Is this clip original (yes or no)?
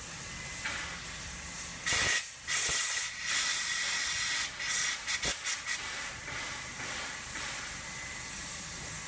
yes